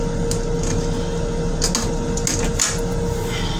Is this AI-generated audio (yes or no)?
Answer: no